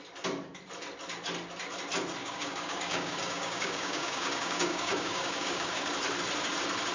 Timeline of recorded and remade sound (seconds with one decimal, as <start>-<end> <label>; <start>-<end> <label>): 0.0-2.2 recorded; 2.2-5.9 remade; 5.9-6.9 recorded